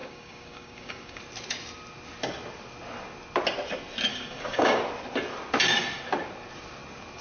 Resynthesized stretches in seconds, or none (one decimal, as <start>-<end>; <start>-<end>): 0.0-1.2; 4.1-4.8